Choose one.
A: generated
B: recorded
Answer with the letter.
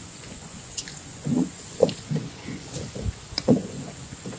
A